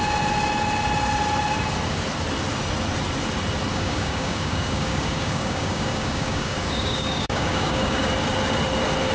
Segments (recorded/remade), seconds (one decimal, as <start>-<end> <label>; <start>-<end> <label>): 0.0-3.7 recorded; 3.7-8.1 remade; 8.1-9.1 recorded